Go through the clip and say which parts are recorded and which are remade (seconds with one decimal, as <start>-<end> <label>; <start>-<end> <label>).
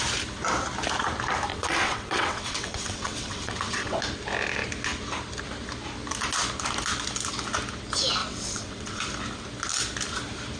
0.0-1.5 recorded; 1.5-4.0 remade; 4.0-8.2 recorded; 8.2-9.1 remade; 9.1-10.6 recorded